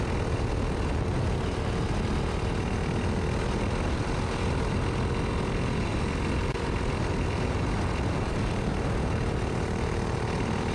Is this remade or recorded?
recorded